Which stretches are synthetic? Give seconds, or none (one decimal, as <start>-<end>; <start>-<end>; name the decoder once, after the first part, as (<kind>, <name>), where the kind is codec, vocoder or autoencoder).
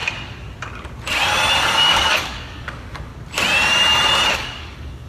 1.7-3.1 (codec, DAC); 4.3-5.1